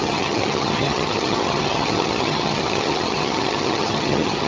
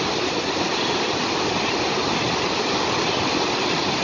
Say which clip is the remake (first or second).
first